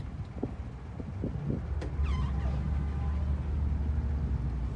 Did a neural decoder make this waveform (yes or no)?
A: no